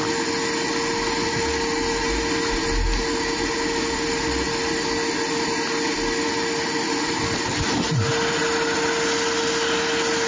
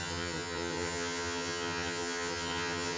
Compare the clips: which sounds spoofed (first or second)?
second